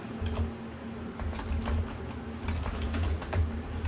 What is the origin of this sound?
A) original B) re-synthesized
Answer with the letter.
A